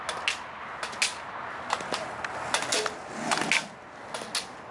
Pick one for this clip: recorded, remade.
recorded